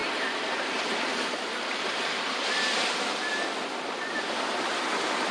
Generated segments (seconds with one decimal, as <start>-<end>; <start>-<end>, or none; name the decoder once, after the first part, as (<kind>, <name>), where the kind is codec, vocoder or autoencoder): 1.0-5.3 (vocoder, BigVGAN v2)